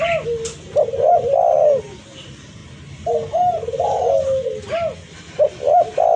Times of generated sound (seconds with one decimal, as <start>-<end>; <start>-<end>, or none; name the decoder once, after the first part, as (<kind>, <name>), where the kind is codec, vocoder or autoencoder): none